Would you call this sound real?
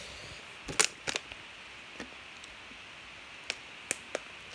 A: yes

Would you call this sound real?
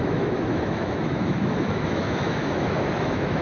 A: no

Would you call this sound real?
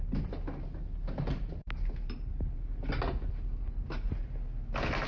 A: yes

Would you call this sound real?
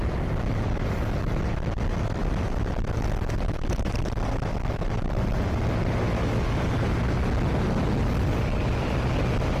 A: yes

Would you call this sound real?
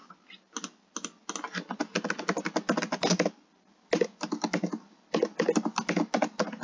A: yes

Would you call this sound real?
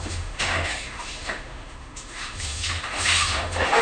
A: no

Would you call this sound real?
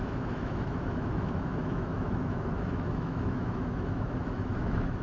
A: no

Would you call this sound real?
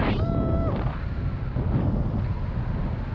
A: yes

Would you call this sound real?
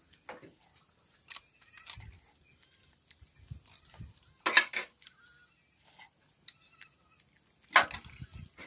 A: yes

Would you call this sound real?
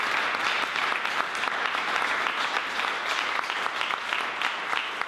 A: yes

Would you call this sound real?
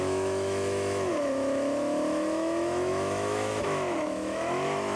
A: no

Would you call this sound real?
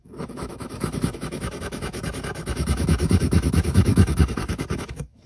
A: no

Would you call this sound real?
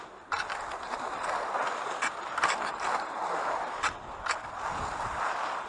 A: yes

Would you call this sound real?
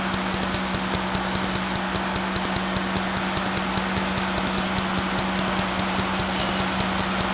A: yes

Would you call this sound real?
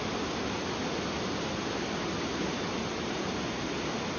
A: yes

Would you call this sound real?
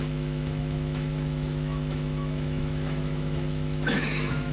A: no